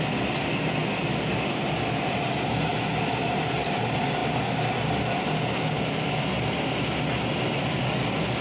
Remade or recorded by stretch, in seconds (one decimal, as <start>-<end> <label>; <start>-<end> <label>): 0.0-0.8 remade; 0.8-2.1 recorded; 2.1-2.7 remade; 2.7-3.4 recorded; 3.4-4.2 remade; 4.2-7.2 recorded; 7.2-8.4 remade